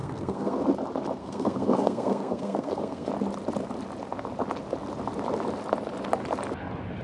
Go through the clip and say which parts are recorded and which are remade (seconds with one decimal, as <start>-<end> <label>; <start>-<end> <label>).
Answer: 0.0-0.6 remade; 0.6-1.2 recorded; 1.2-3.1 remade; 3.1-7.0 recorded

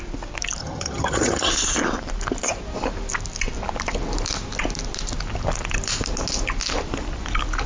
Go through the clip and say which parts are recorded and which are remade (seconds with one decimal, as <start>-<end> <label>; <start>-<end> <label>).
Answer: 0.0-0.6 recorded; 0.6-1.5 remade; 1.5-7.7 recorded

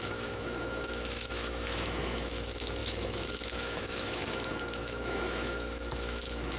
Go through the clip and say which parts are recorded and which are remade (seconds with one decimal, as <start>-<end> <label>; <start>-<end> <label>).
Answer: 0.0-6.6 remade

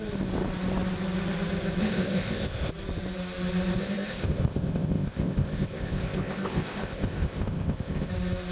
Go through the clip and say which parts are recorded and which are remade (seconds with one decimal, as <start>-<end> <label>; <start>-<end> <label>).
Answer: 0.0-1.8 recorded; 1.8-2.7 remade; 2.7-3.8 recorded; 3.8-8.1 remade; 8.1-8.5 recorded

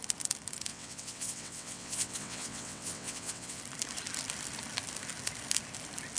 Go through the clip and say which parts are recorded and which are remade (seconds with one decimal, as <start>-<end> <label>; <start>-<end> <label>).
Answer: 0.0-0.7 recorded; 0.7-3.6 remade; 3.6-6.2 recorded

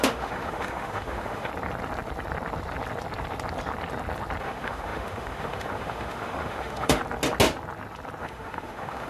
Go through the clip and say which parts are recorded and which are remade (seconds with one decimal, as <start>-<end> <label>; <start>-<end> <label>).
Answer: 0.0-1.5 remade; 1.5-4.4 recorded; 4.4-7.0 remade; 7.0-8.2 recorded; 8.2-9.1 remade